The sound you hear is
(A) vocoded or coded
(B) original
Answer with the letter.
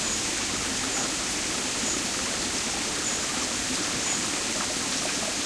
B